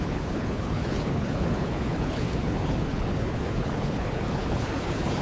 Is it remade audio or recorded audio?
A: remade